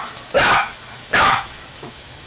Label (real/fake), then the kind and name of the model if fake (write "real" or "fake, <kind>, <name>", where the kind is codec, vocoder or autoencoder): fake, autoencoder, DAC-VAE